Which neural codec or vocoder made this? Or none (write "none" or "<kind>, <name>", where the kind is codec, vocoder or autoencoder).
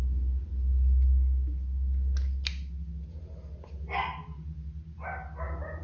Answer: none